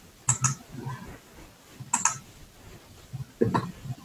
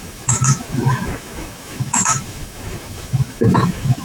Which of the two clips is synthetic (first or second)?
second